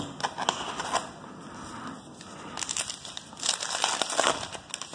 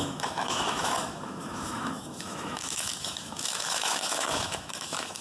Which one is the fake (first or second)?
second